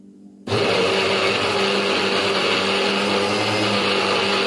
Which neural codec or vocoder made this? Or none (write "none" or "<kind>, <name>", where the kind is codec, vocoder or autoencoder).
none